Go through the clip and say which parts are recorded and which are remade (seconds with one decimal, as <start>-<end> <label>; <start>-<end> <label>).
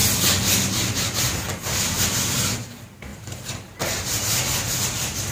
0.0-3.1 recorded; 3.1-4.4 remade; 4.4-5.3 recorded